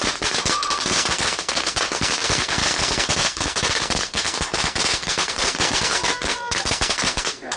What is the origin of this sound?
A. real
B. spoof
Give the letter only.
B